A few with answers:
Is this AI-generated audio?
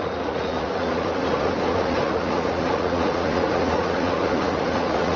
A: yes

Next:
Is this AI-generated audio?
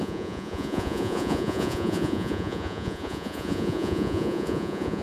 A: yes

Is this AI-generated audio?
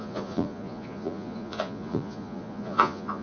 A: yes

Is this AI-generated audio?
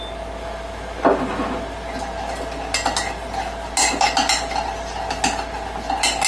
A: no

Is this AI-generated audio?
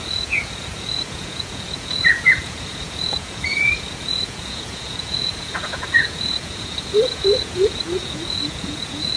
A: yes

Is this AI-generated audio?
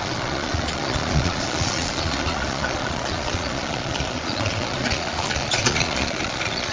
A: yes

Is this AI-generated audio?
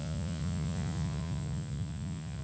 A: yes